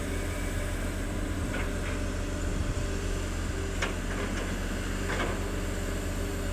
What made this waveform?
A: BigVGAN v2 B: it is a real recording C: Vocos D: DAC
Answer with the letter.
B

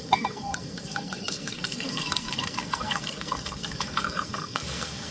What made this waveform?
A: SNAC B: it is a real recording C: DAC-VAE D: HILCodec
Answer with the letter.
A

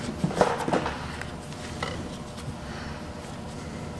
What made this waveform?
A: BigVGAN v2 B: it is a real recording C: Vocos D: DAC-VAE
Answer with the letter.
B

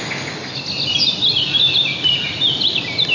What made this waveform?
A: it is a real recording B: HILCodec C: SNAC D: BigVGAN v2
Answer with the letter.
A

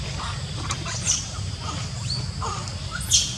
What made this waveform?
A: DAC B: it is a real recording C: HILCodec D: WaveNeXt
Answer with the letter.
B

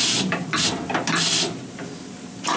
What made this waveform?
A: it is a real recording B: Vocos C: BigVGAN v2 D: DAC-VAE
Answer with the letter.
C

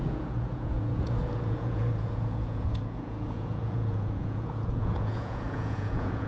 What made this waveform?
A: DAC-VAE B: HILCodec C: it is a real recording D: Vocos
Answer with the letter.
D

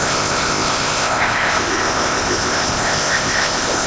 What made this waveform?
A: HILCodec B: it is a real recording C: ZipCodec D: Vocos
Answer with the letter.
C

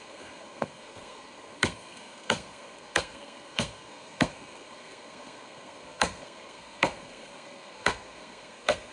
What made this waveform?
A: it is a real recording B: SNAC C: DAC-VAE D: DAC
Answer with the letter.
B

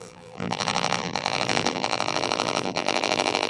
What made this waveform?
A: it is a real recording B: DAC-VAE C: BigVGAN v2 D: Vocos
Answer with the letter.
C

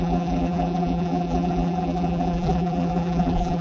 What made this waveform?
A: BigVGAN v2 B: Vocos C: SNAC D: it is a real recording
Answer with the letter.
A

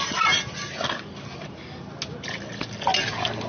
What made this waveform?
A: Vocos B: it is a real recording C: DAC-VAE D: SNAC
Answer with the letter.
B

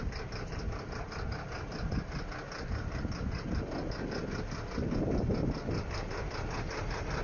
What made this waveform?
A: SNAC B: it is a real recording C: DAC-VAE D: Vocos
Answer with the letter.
B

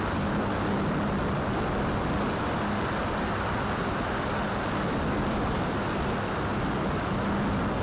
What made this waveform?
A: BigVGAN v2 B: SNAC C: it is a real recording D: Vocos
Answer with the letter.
C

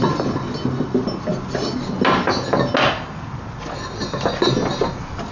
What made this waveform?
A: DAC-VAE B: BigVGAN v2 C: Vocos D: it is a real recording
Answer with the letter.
D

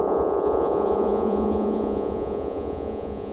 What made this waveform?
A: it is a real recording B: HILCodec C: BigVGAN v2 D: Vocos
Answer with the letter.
D